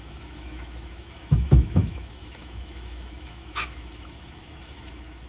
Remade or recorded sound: remade